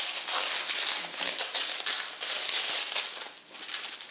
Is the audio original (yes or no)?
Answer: yes